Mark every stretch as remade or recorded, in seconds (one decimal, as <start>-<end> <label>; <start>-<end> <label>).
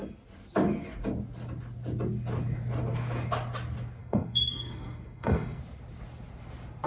0.0-4.0 recorded; 4.0-5.6 remade; 5.6-6.9 recorded